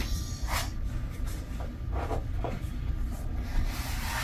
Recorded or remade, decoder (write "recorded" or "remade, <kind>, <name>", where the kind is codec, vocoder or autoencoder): recorded